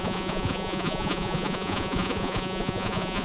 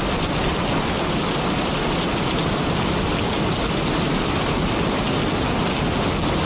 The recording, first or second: second